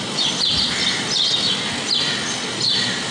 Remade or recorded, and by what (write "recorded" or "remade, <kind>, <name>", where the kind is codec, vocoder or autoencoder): recorded